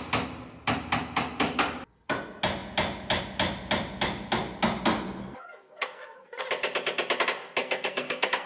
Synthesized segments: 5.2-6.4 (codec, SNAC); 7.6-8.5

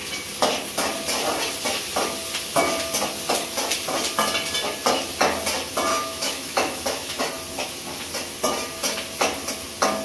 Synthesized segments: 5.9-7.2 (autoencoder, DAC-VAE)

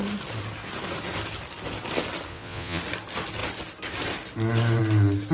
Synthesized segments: 2.3-2.8 (vocoder, Vocos)

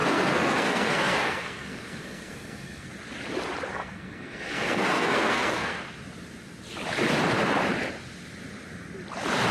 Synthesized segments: 0.0-2.9 (codec, SNAC); 3.7-5.8

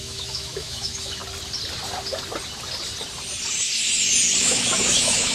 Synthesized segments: 0.0-1.2 (autoencoder, DAC-VAE); 4.4-5.3

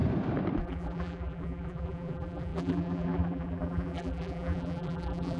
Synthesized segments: 0.6-5.4 (vocoder, BigVGAN v2)

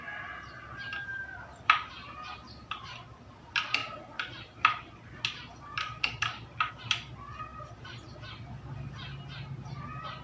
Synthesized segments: 7.5-8.9 (vocoder, BigVGAN v2)